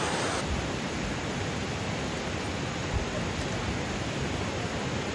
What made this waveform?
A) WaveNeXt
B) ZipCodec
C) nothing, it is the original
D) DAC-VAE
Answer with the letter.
C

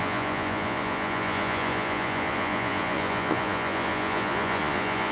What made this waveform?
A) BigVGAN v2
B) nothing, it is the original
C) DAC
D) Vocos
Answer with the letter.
D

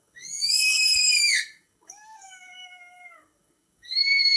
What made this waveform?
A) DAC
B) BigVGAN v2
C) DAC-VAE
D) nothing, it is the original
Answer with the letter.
A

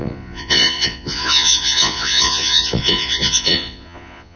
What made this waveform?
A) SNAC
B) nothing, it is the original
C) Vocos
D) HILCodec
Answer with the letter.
C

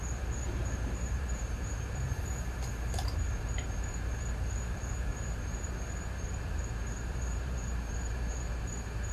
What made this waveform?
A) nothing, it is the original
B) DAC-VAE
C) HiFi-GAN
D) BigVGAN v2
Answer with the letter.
D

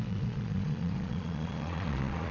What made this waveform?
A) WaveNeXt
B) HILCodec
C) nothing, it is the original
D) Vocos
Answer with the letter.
D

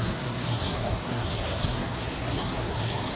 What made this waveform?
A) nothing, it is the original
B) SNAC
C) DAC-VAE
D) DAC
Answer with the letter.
B